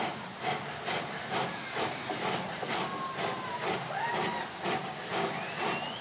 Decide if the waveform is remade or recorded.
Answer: recorded